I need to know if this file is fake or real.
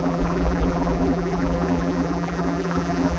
fake